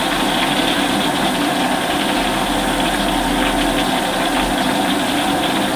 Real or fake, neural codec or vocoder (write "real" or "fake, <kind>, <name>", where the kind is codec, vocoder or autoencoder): real